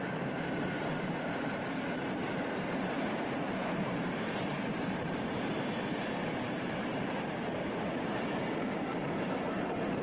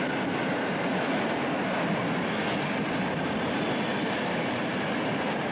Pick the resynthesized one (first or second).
first